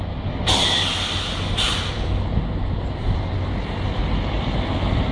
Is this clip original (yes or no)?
yes